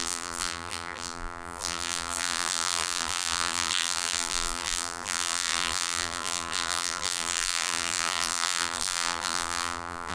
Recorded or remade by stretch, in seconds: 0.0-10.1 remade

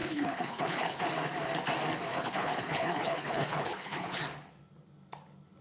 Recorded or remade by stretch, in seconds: 0.0-1.1 remade; 1.1-2.1 recorded; 2.1-4.2 remade; 4.2-5.6 recorded

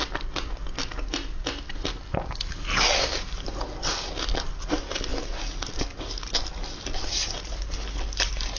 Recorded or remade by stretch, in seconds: 0.0-8.6 recorded

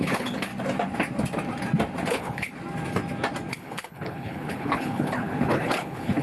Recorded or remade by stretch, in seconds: 0.0-0.5 remade; 0.5-2.1 recorded; 2.1-2.5 remade; 2.5-3.5 recorded; 3.5-6.2 remade

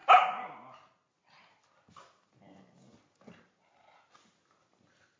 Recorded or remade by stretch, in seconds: 0.0-5.2 recorded

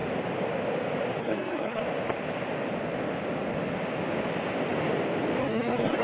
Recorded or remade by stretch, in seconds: 0.0-1.2 recorded; 1.2-1.8 remade; 1.8-5.4 recorded; 5.4-6.0 remade

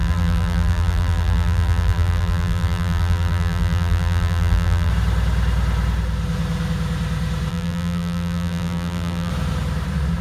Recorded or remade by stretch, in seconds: 0.0-4.9 remade; 4.9-7.5 recorded; 7.5-9.3 remade; 9.3-10.2 recorded

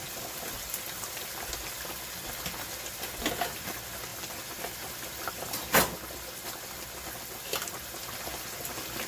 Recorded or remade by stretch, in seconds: 0.0-9.1 recorded